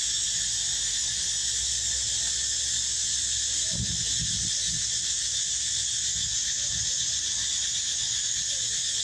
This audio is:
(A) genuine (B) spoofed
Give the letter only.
A